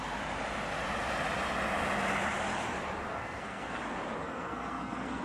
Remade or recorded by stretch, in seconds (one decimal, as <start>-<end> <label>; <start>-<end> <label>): 0.0-3.1 recorded; 3.1-3.8 remade; 3.8-4.2 recorded; 4.2-5.2 remade